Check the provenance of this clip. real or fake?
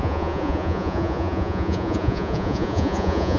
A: fake